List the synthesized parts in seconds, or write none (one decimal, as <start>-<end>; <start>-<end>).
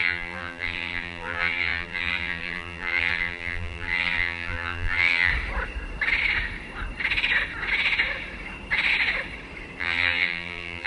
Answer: 0.0-5.3; 9.8-10.9